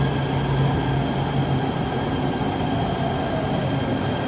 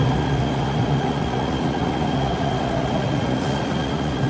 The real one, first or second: first